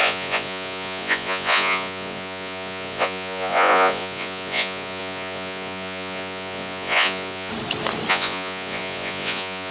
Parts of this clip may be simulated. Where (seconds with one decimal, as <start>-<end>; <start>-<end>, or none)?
0.0-7.5; 8.1-9.7